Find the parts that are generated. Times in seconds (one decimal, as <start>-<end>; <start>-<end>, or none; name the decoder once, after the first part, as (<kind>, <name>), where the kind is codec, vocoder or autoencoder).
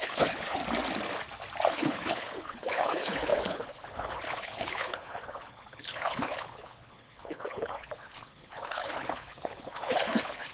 0.0-0.6 (codec, HILCodec); 1.7-10.5